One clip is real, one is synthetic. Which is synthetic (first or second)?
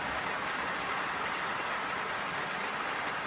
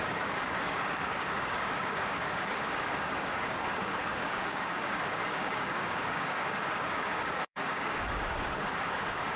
second